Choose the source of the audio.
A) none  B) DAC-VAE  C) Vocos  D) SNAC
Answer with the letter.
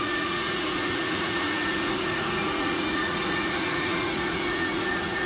C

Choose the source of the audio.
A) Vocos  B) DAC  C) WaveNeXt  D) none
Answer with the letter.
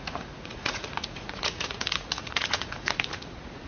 A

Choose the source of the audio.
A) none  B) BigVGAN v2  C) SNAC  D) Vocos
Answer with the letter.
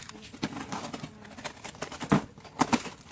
A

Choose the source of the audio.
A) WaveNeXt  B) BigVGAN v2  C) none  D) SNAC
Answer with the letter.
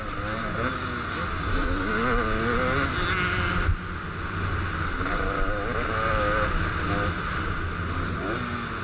C